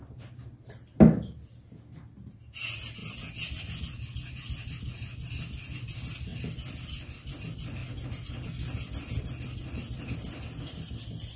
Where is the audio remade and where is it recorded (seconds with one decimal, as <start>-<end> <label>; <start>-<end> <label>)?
0.0-11.4 recorded